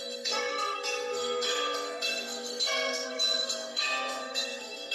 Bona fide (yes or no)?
no